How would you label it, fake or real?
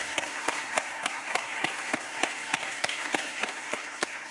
fake